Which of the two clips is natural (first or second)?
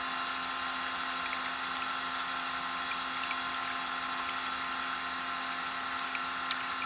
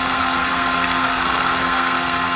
first